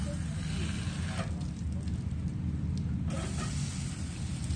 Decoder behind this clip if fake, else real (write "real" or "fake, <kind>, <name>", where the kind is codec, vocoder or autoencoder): real